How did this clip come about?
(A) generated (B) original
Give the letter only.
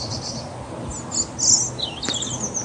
B